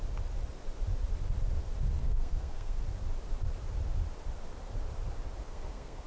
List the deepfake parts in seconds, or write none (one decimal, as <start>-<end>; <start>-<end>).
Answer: 2.0-2.8; 5.4-6.1